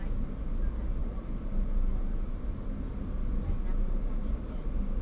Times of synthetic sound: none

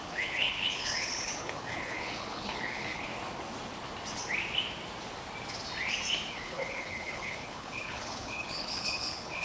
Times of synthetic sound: 0.0-3.1 (codec, HILCodec); 6.3-9.4

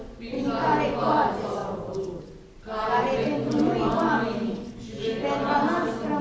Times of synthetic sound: 1.6-2.2 (vocoder, BigVGAN v2)

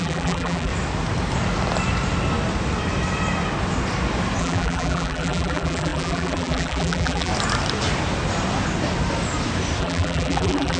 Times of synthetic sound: 0.0-0.7 (vocoder, BigVGAN v2); 4.4-7.3; 9.8-10.8

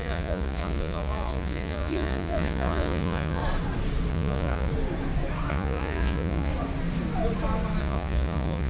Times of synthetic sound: 0.0-3.4 (vocoder, Vocos); 4.1-4.7; 5.5-6.5; 7.8-8.7

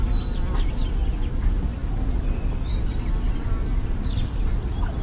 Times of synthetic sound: none

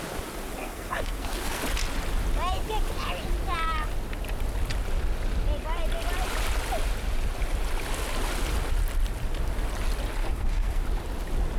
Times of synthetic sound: 0.6-1.6 (codec, SNAC); 10.2-10.8

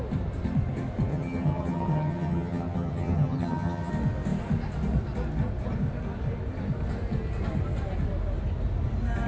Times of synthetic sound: 1.1-3.9 (vocoder, HiFi-GAN)